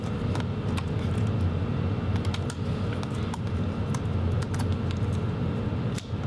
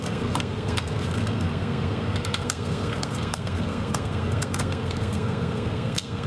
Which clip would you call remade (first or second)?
second